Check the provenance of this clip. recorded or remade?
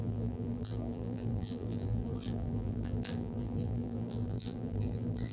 remade